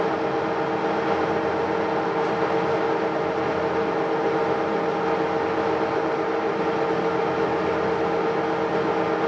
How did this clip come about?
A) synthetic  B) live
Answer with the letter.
B